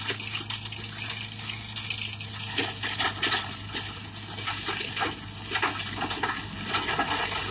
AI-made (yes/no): no